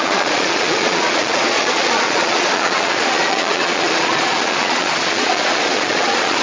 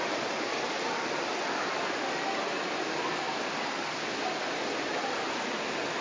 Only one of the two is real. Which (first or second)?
second